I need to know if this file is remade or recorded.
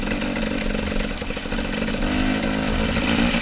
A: recorded